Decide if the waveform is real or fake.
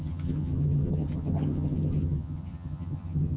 fake